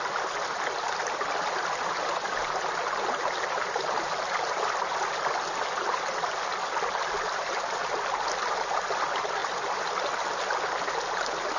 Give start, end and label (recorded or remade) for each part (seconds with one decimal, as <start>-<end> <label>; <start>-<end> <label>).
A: 0.0-11.6 recorded